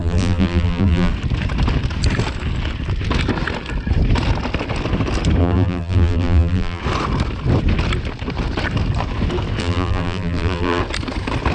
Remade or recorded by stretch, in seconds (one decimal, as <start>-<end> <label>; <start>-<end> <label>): 0.0-1.1 remade; 1.1-5.4 recorded; 5.4-6.8 remade; 6.8-9.6 recorded; 9.6-10.8 remade; 10.8-11.5 recorded